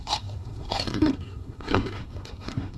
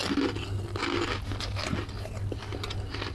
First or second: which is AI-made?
first